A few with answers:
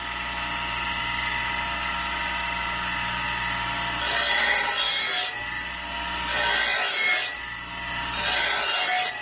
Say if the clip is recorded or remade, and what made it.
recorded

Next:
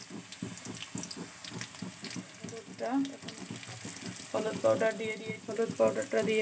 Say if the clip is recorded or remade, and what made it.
recorded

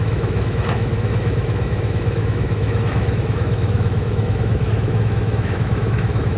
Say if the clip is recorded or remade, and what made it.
remade, autoencoder, DAC-VAE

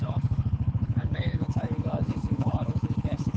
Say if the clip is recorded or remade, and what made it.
remade, codec, HILCodec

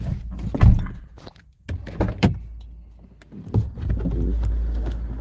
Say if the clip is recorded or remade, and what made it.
recorded